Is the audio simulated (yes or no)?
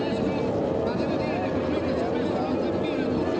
no